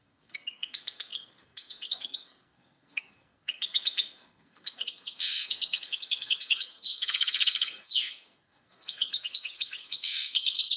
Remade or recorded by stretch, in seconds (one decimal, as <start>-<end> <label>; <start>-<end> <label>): 0.0-10.8 remade